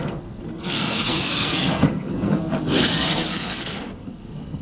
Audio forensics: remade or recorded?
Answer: remade